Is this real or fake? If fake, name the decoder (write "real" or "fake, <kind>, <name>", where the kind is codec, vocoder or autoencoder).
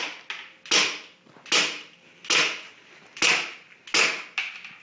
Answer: real